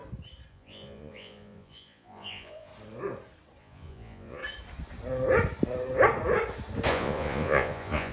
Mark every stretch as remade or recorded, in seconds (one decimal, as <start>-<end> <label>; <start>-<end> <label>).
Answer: 0.0-0.5 recorded; 0.5-2.7 remade; 2.7-3.6 recorded; 3.6-4.4 remade; 4.4-6.9 recorded; 6.9-8.1 remade

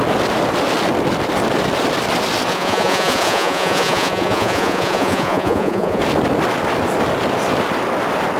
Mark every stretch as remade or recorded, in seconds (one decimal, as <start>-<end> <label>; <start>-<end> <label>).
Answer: 0.0-2.5 recorded; 2.5-6.0 remade; 6.0-8.4 recorded

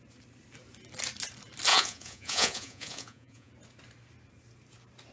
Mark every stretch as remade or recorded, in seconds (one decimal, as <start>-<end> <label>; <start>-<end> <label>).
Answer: 0.0-1.7 recorded; 1.7-3.5 remade; 3.5-5.1 recorded

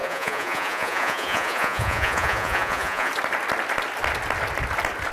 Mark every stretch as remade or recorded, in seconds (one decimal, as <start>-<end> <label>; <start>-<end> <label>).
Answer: 0.0-3.1 remade; 3.1-5.1 recorded

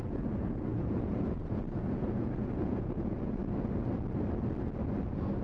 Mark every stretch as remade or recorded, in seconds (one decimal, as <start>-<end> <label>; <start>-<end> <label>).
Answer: 0.0-3.4 remade; 3.4-5.4 recorded

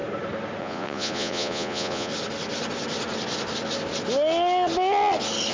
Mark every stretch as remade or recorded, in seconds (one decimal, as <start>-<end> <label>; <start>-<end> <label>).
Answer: 0.0-0.6 recorded; 0.6-2.1 remade; 2.1-5.5 recorded

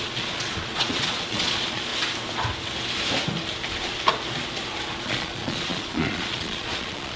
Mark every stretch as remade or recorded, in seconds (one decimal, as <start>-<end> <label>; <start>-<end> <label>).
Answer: 0.0-1.9 remade; 1.9-5.0 recorded; 5.0-7.2 remade